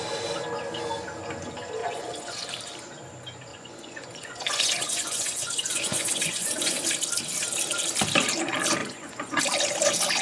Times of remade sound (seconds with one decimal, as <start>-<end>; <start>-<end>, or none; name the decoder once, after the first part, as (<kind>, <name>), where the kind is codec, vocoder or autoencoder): 1.8-2.5 (vocoder, Vocos); 3.5-6.8; 8.8-9.4